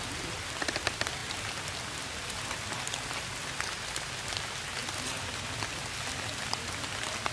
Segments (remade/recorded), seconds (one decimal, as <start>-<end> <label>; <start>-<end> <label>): 0.0-7.3 recorded